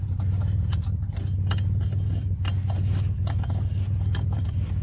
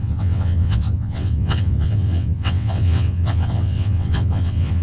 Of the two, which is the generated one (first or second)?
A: second